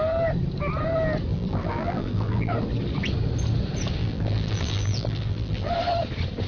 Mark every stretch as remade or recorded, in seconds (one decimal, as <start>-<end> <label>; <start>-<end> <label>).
0.0-1.3 recorded; 1.3-2.5 remade; 2.5-4.0 recorded; 4.0-5.7 remade; 5.7-6.5 recorded